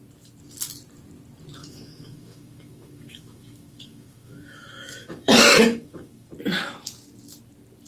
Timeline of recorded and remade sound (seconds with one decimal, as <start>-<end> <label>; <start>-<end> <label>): 0.0-1.6 recorded; 1.6-6.3 remade; 6.3-7.9 recorded